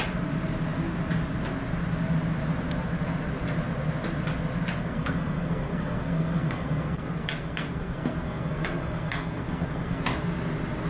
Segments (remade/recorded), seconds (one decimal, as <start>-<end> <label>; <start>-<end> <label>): 0.0-4.8 recorded; 4.8-10.0 remade; 10.0-10.9 recorded